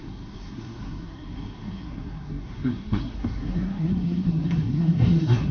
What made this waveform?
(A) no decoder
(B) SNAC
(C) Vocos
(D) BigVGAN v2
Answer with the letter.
B